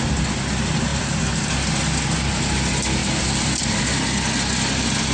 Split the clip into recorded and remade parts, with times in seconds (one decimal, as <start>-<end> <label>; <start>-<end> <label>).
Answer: 0.0-0.9 recorded; 0.9-1.5 remade; 1.5-3.0 recorded; 3.0-3.8 remade; 3.8-5.1 recorded